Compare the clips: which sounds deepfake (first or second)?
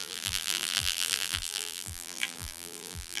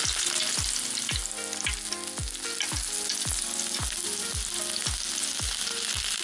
first